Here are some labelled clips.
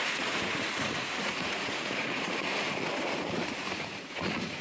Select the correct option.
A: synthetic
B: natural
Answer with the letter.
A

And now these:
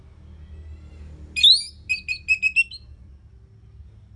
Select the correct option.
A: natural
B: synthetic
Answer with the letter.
A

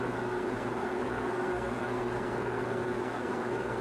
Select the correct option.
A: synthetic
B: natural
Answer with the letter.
A